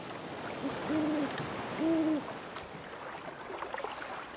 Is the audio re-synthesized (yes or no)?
no